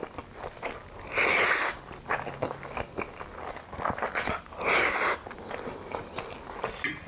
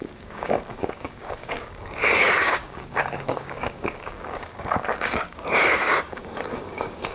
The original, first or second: first